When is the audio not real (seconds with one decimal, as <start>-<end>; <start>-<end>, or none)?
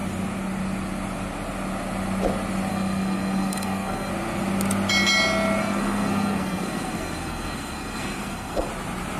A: 2.7-4.1; 5.6-8.7